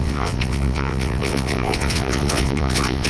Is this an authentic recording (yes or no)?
no